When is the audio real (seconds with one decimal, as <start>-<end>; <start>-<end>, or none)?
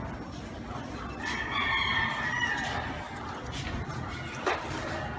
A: 0.0-5.2